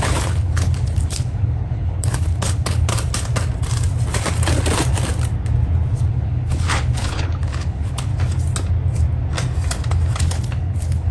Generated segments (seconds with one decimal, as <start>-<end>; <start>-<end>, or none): 0.0-2.9; 6.1-8.1; 10.2-11.1